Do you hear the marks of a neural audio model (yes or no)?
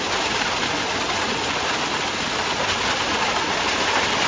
no